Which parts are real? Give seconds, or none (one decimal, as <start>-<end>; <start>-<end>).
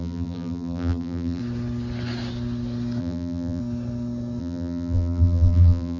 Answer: 1.4-3.0; 3.6-4.4